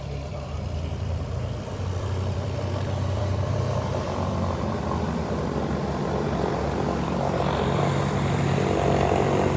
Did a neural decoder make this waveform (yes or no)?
yes